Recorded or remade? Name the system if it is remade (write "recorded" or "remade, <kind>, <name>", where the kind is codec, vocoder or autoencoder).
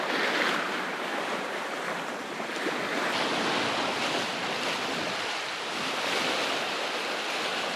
recorded